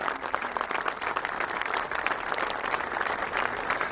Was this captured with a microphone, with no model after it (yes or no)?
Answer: yes